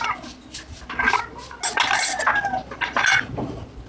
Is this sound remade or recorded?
recorded